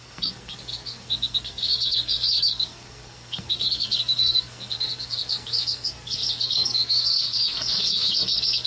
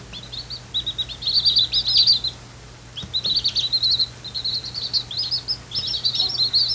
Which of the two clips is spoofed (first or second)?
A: first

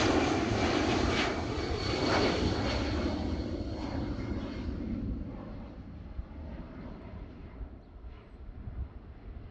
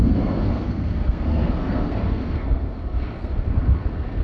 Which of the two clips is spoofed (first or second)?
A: second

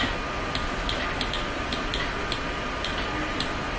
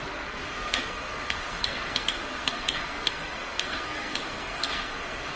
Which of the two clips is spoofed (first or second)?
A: second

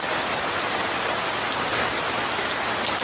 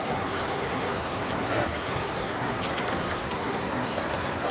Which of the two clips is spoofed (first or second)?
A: second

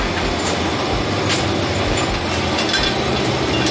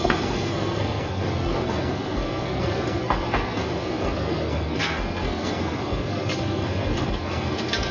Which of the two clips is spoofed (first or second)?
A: second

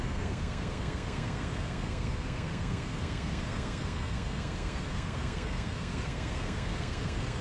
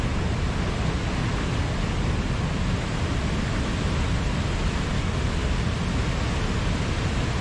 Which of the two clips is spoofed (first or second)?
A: first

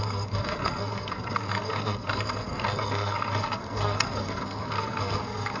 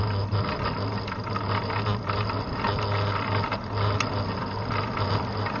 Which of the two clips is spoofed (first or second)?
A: first